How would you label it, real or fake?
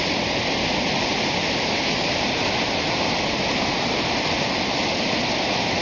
real